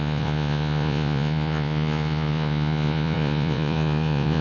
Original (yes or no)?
no